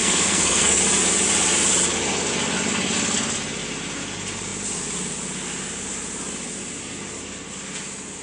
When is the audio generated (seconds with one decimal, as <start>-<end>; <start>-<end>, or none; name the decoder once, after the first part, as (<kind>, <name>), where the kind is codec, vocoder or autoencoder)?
0.0-0.8 (codec, SNAC)